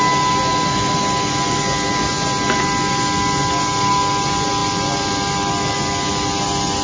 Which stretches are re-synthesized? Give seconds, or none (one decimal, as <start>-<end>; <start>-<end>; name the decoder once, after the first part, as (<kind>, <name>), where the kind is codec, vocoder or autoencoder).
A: none